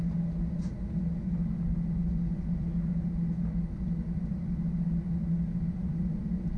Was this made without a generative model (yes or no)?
yes